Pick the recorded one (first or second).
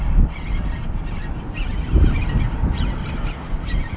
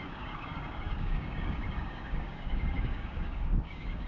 first